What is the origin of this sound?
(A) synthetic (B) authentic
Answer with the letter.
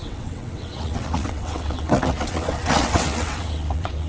A